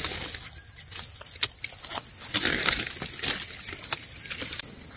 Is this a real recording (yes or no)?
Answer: yes